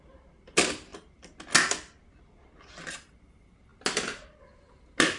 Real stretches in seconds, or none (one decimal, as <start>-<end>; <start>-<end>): 0.0-5.2